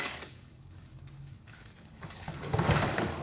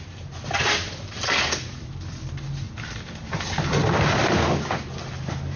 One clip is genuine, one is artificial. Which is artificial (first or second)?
first